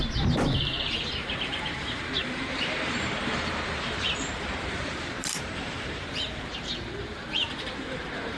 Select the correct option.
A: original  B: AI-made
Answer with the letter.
B